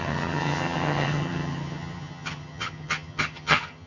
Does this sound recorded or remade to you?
remade